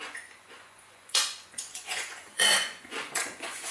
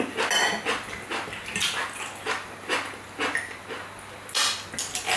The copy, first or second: first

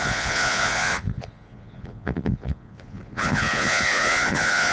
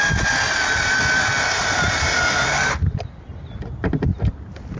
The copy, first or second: first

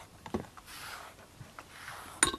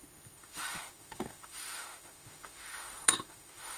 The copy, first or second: second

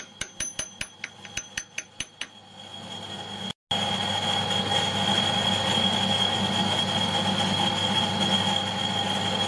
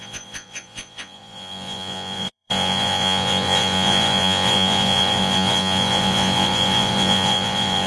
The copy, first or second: second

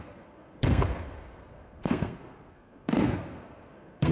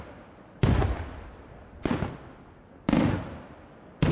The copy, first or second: first